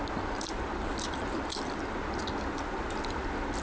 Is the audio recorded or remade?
recorded